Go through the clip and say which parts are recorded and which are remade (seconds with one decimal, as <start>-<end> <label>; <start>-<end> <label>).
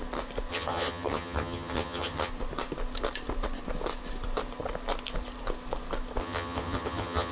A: 0.0-0.5 recorded; 0.5-2.3 remade; 2.3-6.2 recorded; 6.2-7.3 remade